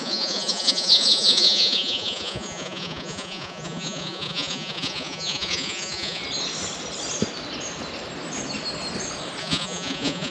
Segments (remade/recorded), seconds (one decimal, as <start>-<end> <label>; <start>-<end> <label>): 0.0-6.2 remade; 6.2-9.4 recorded; 9.4-10.3 remade